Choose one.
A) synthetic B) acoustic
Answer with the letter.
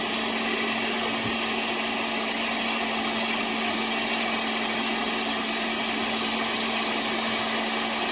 B